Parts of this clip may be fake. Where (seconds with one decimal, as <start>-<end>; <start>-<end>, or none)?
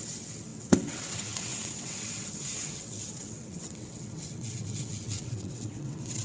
0.0-6.2